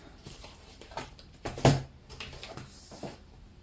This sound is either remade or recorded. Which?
remade